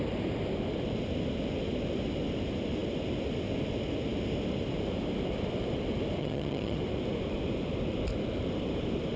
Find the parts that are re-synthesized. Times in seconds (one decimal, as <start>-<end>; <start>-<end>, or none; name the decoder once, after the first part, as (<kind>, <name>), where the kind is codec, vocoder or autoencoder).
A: 6.2-6.8 (vocoder, HiFi-GAN)